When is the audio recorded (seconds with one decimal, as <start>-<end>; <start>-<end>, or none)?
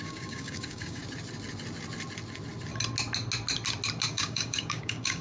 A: 1.0-4.1